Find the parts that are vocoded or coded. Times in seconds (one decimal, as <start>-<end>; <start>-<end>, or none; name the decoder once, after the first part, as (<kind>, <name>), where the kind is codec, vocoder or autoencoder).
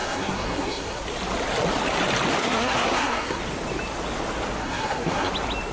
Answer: 0.0-1.0 (codec, SNAC); 2.4-3.4; 4.6-5.3